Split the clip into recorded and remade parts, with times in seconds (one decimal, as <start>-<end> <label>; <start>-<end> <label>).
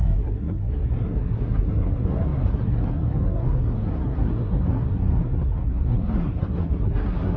0.0-7.4 remade